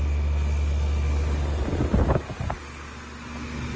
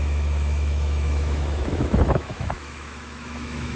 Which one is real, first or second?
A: first